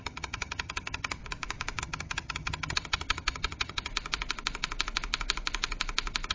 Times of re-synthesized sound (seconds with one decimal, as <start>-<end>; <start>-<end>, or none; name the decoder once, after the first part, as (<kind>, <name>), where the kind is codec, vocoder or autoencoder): 0.0-1.2 (vocoder, HiFi-GAN); 1.8-3.9